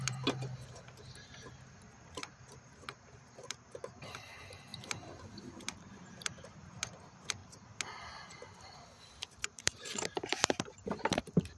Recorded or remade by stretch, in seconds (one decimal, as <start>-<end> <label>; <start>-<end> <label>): 0.0-7.4 remade; 7.4-9.0 recorded; 9.0-11.6 remade